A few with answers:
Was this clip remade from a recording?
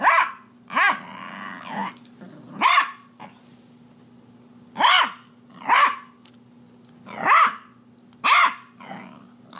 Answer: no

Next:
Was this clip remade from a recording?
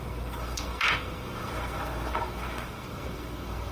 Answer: yes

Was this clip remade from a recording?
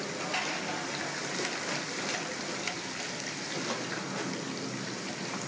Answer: no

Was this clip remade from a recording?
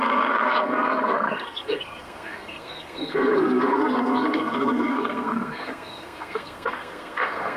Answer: yes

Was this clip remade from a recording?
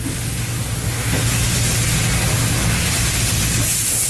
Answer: no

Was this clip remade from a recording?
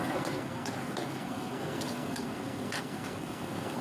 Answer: yes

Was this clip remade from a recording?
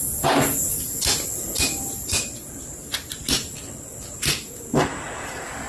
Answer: no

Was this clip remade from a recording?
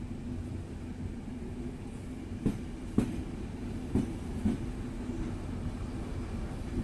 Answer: no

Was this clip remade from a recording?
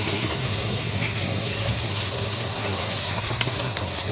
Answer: yes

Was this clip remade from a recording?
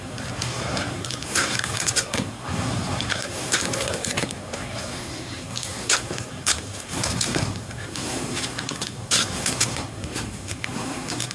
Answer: yes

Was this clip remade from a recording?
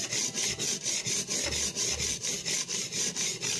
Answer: no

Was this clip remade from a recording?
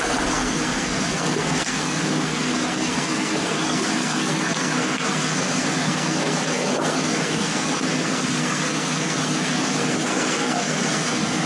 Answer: yes